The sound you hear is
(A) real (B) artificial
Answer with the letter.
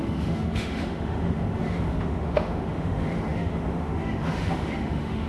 B